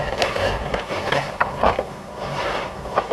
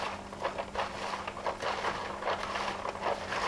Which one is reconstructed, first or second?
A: first